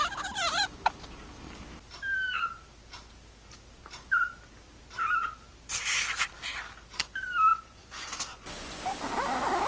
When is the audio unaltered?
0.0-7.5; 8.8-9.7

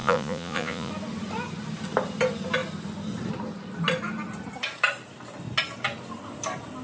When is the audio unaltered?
0.9-6.8

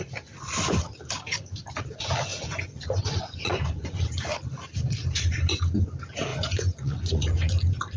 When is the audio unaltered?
0.0-2.3; 4.0-6.3; 7.5-8.0

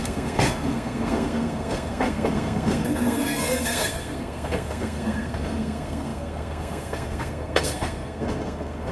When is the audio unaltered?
none

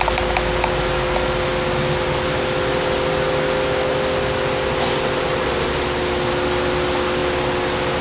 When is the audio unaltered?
0.0-8.0

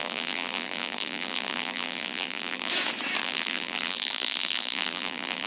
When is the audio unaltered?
2.7-3.2

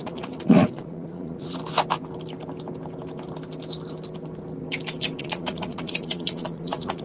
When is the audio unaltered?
1.6-5.2

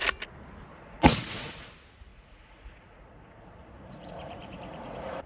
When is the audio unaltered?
0.0-0.7; 1.7-2.1